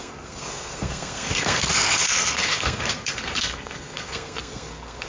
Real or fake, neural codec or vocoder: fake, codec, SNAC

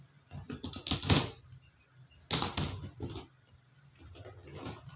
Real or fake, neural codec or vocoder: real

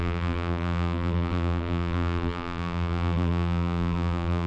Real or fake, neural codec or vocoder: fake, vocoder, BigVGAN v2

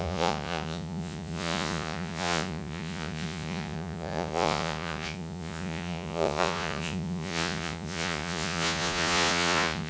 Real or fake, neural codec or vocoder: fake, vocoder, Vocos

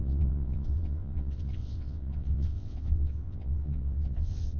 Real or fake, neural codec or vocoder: fake, vocoder, WaveNeXt